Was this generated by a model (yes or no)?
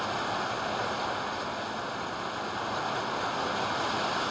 no